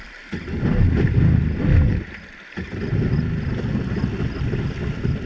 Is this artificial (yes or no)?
no